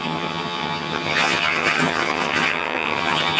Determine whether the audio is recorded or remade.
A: remade